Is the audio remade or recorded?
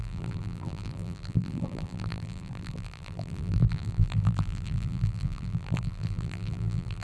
remade